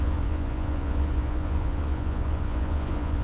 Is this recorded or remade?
remade